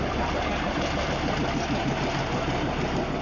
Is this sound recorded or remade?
recorded